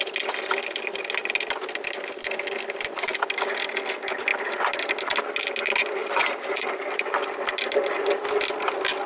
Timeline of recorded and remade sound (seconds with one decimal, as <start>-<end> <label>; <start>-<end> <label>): 0.0-6.0 recorded; 6.0-6.7 remade; 6.7-9.1 recorded